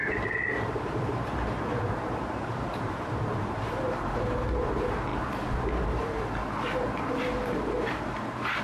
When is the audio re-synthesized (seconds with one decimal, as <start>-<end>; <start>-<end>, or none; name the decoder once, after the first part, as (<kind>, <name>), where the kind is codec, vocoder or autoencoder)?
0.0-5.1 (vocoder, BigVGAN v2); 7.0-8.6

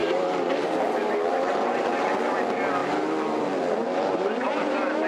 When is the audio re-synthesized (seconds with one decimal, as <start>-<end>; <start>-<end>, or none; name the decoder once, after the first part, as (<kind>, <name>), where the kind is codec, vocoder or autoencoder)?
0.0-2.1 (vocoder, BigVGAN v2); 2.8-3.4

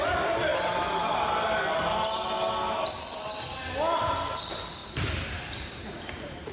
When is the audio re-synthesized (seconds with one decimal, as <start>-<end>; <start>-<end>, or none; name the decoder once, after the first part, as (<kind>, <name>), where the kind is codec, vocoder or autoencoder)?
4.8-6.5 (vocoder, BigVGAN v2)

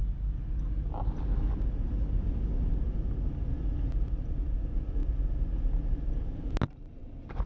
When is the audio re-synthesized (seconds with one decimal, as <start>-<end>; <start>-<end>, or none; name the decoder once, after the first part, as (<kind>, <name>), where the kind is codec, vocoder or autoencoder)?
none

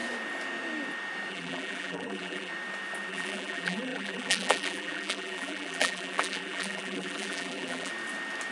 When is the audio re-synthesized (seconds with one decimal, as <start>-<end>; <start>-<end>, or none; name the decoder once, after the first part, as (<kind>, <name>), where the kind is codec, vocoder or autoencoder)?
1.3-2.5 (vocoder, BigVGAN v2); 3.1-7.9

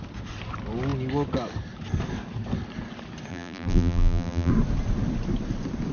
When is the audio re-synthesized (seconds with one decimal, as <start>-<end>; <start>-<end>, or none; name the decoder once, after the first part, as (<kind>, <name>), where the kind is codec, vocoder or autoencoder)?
3.3-4.5 (vocoder, BigVGAN v2)

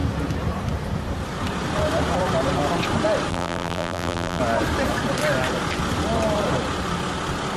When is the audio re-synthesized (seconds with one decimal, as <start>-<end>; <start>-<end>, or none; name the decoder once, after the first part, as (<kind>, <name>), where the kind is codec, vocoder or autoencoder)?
3.3-4.4 (vocoder, BigVGAN v2)

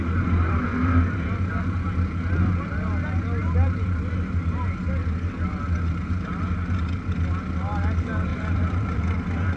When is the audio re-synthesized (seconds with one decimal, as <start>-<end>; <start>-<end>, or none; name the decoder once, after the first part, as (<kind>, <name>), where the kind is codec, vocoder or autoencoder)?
0.8-1.5 (vocoder, BigVGAN v2); 8.3-9.0